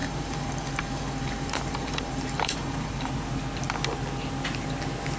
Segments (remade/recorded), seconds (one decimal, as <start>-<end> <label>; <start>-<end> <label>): 0.0-3.1 remade; 3.1-5.2 recorded

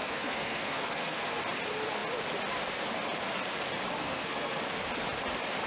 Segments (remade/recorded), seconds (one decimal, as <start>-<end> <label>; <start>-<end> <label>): 0.0-1.4 remade; 1.4-4.0 recorded; 4.0-4.6 remade; 4.6-5.7 recorded

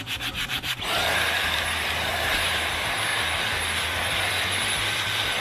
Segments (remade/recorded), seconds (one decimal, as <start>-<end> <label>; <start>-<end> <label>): 0.0-3.1 remade; 3.1-3.8 recorded; 3.8-5.4 remade

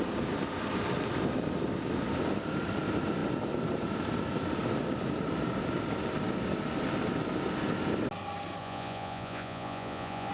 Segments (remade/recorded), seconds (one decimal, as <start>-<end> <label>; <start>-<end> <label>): 0.0-8.6 recorded; 8.6-10.3 remade

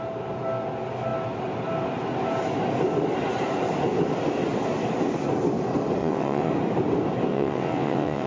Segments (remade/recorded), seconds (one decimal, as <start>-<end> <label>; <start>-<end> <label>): 0.0-6.0 recorded; 6.0-6.5 remade; 6.5-7.3 recorded; 7.3-8.3 remade